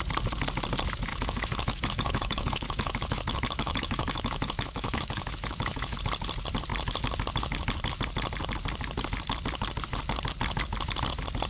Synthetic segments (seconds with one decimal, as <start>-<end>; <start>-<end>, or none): 1.1-6.0